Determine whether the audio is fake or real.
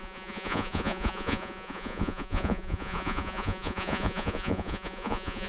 fake